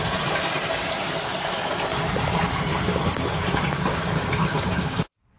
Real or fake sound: fake